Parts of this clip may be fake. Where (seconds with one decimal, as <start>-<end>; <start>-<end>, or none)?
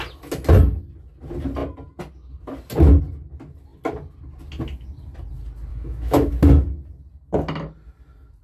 5.7-6.3